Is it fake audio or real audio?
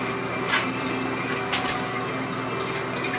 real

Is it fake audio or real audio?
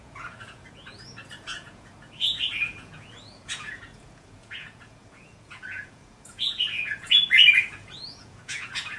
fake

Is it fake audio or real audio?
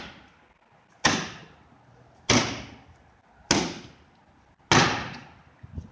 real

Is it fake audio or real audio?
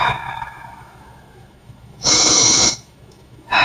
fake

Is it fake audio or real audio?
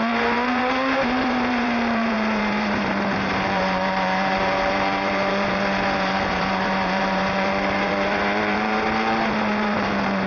fake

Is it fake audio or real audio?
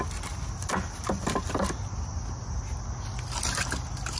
real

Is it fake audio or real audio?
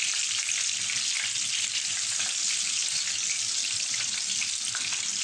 real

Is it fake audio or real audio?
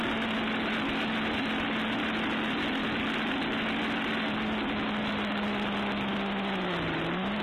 real